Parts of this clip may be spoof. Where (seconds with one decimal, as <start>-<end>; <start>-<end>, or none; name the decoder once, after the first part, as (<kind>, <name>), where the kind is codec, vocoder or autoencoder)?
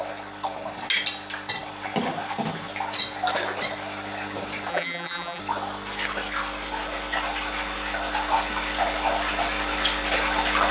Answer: 4.7-5.4 (vocoder, BigVGAN v2)